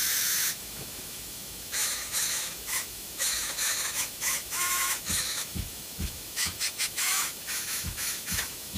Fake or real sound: fake